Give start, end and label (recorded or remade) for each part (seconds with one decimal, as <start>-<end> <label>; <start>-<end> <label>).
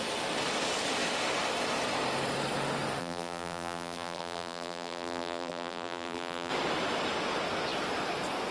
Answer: 0.0-3.0 recorded; 3.0-6.5 remade; 6.5-8.5 recorded